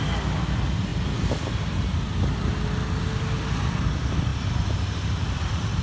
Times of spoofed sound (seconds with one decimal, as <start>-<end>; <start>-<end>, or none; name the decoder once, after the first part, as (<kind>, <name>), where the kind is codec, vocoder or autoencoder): 4.3-5.8 (vocoder, BigVGAN v2)